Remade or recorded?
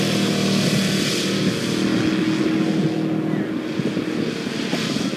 recorded